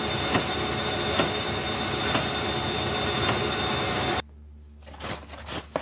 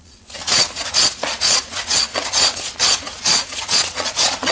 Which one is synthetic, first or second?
second